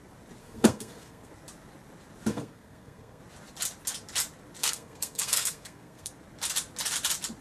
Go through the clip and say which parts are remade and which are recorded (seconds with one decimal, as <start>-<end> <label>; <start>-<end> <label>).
0.0-0.4 recorded; 0.4-1.3 remade; 1.3-2.3 recorded; 2.3-3.2 remade; 3.2-4.6 recorded; 4.6-6.1 remade; 6.1-7.4 recorded